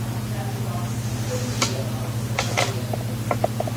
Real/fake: real